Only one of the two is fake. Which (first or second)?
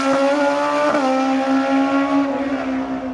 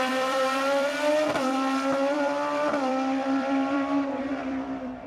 second